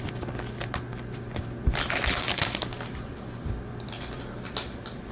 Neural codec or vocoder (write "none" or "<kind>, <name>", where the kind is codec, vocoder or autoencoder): none